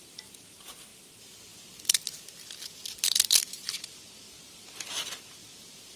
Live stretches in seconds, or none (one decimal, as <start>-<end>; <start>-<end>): 0.9-3.5